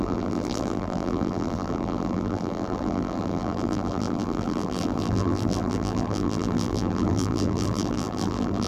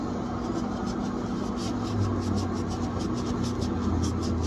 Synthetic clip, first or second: first